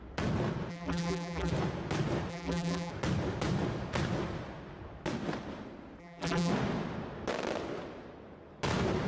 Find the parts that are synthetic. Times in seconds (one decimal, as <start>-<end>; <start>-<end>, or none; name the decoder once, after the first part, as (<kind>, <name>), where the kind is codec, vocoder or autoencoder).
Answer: 0.7-1.5 (vocoder, BigVGAN v2); 2.3-2.9; 6.0-6.5